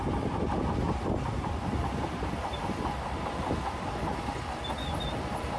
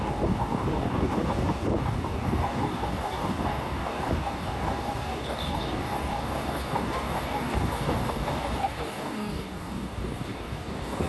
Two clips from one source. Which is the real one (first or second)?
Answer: first